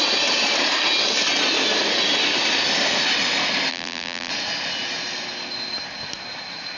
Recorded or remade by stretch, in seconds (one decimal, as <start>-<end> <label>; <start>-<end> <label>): 0.0-3.7 recorded; 3.7-4.3 remade; 4.3-6.8 recorded